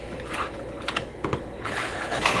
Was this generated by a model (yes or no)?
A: yes